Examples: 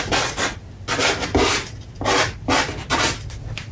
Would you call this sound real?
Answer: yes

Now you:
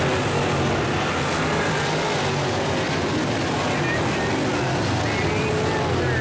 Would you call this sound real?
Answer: yes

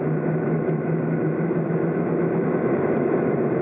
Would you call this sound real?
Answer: no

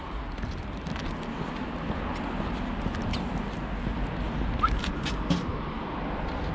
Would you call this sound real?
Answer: yes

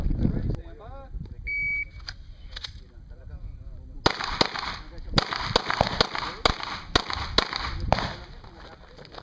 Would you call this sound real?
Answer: yes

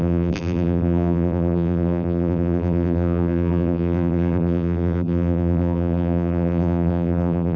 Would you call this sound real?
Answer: no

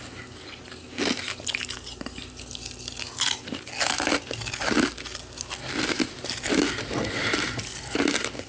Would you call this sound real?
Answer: yes